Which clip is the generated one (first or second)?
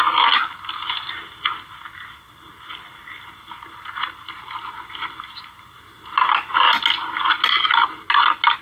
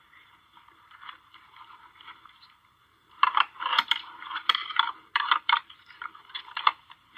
second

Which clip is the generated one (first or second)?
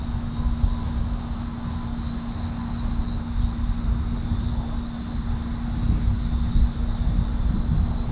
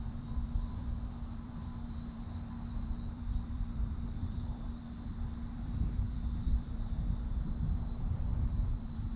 second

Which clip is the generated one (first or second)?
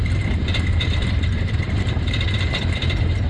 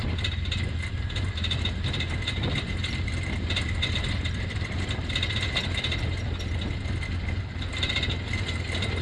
first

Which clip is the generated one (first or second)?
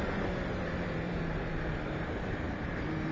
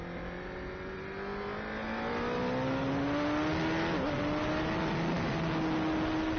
first